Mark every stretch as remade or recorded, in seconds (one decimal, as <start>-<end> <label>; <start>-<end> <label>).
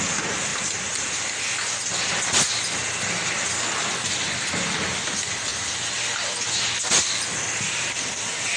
0.0-8.6 recorded